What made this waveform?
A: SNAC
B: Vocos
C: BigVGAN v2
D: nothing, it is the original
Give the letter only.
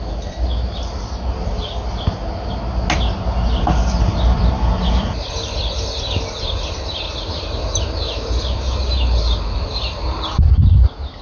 D